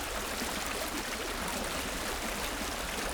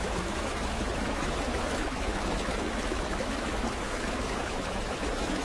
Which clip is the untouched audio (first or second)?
first